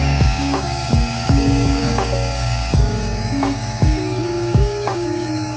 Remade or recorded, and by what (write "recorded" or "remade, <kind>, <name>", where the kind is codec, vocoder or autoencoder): remade, codec, DAC